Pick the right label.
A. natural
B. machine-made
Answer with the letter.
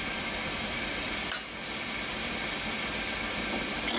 A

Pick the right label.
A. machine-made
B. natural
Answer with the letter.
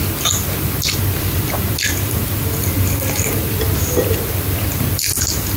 B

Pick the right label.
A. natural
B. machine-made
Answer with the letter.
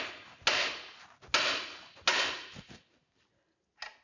A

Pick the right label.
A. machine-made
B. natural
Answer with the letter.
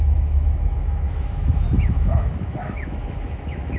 A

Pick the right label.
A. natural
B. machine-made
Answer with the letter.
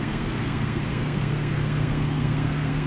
B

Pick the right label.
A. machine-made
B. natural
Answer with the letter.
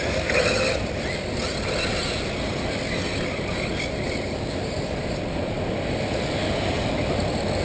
B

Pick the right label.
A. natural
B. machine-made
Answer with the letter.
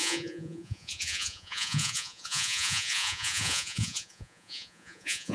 B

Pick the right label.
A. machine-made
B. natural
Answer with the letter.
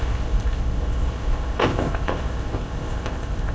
A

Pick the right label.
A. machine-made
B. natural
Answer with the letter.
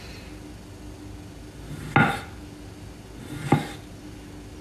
B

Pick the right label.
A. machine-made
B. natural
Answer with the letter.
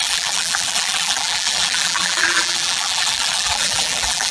A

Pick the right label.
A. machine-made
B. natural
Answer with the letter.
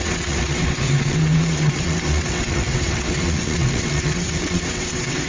A